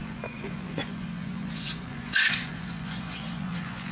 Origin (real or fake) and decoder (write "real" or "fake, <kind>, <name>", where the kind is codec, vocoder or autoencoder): fake, vocoder, Vocos